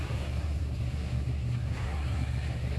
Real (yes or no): no